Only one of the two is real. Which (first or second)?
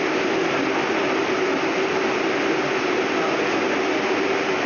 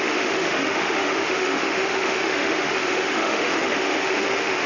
first